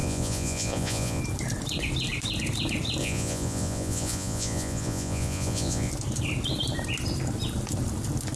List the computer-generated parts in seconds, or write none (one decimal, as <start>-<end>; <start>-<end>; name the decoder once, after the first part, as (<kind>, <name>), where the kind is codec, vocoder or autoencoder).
0.0-1.2 (vocoder, Vocos); 3.0-5.9